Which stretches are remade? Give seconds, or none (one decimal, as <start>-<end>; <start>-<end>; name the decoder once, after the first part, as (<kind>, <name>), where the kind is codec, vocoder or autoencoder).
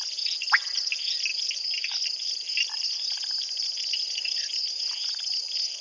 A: none